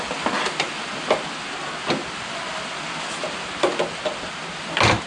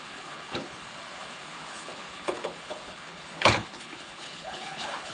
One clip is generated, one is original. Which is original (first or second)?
first